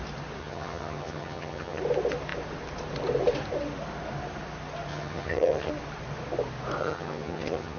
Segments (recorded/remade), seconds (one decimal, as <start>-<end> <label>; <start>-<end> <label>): 0.0-0.4 recorded; 0.4-1.8 remade; 1.8-4.9 recorded; 4.9-5.7 remade; 5.7-6.8 recorded; 6.8-7.8 remade